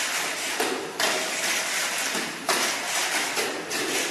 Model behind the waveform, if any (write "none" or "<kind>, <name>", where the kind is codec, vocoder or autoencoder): none